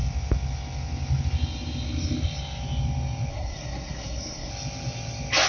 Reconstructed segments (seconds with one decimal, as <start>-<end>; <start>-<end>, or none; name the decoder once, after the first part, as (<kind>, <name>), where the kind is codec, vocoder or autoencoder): 3.3-4.5 (codec, SNAC)